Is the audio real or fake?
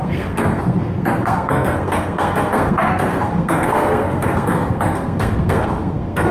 fake